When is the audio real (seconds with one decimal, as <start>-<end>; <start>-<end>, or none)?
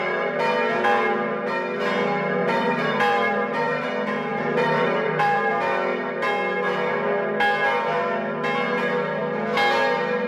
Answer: 0.0-2.4; 3.9-4.3; 5.5-10.3